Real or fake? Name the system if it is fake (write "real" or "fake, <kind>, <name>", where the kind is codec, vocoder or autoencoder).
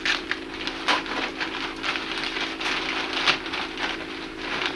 real